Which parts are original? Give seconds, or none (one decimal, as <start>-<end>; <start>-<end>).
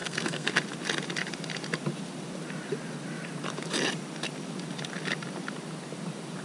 0.5-6.4